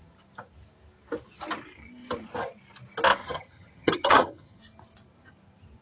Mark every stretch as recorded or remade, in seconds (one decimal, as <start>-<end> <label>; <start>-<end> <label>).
0.0-3.2 recorded; 3.2-4.6 remade; 4.6-5.8 recorded

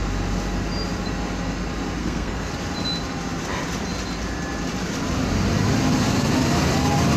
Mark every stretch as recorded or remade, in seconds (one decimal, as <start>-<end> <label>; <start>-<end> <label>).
0.0-2.0 recorded; 2.0-2.5 remade; 2.5-7.2 recorded

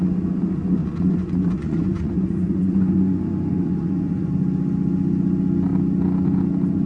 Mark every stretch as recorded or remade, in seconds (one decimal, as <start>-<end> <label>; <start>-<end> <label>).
0.0-0.8 recorded; 0.8-4.3 remade; 4.3-6.9 recorded

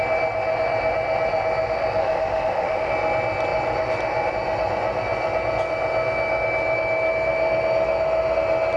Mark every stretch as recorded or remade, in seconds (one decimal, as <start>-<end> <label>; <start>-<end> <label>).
0.0-2.0 recorded; 2.0-2.9 remade; 2.9-8.8 recorded